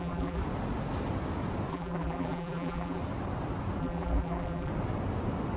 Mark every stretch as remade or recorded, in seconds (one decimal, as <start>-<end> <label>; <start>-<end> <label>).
0.0-0.4 remade; 0.4-1.7 recorded; 1.7-3.0 remade; 3.0-3.8 recorded; 3.8-4.7 remade; 4.7-5.6 recorded